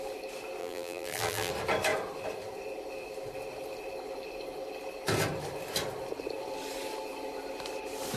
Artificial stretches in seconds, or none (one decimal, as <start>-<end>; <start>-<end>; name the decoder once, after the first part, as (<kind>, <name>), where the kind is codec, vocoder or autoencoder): 0.6-1.5 (vocoder, BigVGAN v2)

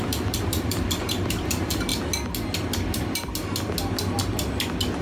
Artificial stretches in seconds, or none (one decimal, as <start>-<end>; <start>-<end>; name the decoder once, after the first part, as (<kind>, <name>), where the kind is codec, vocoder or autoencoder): 0.0-1.9 (vocoder, BigVGAN v2)

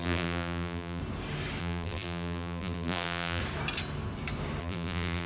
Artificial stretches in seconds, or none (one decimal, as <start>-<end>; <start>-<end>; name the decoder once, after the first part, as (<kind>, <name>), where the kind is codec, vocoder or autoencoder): 0.0-1.0 (vocoder, BigVGAN v2); 1.6-3.4; 4.6-5.3

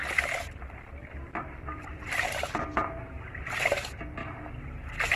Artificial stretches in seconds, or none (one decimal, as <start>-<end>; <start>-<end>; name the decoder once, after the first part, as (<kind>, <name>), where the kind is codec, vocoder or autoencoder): 0.0-2.3 (vocoder, BigVGAN v2)

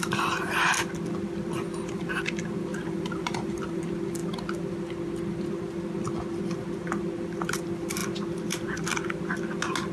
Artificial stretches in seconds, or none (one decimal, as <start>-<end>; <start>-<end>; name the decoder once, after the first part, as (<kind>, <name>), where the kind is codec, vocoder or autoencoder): 2.7-3.8 (vocoder, BigVGAN v2)